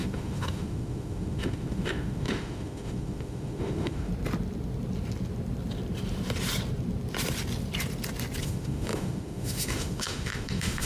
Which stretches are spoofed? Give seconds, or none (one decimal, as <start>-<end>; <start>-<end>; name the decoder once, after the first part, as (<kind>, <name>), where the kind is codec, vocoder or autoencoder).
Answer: 0.0-4.1 (autoencoder, DAC-VAE); 8.4-10.9